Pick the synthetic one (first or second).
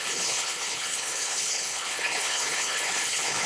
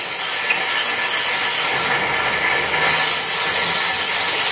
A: first